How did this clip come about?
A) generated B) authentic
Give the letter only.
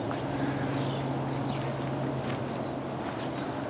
B